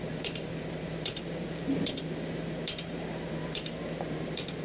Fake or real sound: fake